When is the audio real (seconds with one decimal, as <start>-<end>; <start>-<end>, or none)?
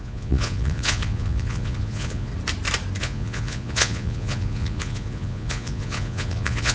2.3-3.0